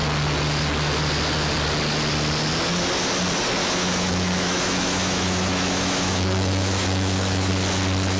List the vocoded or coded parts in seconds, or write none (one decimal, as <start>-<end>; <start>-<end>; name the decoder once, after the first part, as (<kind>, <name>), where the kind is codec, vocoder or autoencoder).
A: 3.6-7.5 (autoencoder, DAC-VAE)